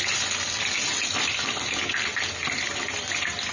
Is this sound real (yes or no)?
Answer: yes